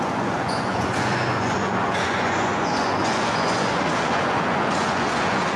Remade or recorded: remade